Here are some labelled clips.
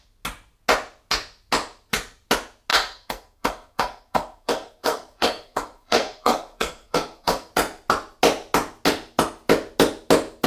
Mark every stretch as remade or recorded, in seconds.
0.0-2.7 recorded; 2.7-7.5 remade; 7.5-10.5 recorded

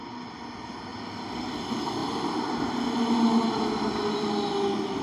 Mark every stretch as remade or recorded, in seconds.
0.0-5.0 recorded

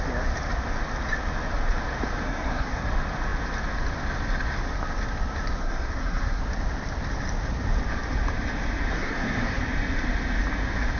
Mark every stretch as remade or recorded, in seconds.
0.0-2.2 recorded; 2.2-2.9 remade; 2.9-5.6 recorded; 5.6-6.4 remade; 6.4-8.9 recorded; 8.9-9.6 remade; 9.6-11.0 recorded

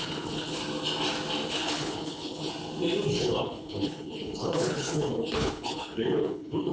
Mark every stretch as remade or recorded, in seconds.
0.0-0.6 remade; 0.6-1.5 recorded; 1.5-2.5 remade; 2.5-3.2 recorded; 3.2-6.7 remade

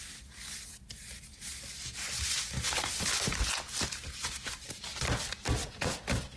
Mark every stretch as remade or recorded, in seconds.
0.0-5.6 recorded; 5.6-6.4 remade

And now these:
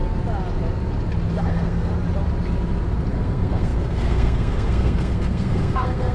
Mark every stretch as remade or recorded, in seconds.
0.0-1.4 recorded; 1.4-1.9 remade; 1.9-3.1 recorded; 3.1-6.1 remade

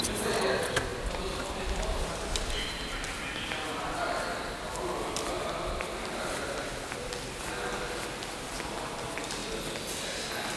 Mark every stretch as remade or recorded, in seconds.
0.0-10.6 recorded

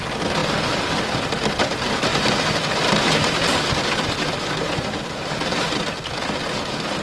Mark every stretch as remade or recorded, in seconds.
0.0-2.1 recorded; 2.1-5.8 remade; 5.8-7.0 recorded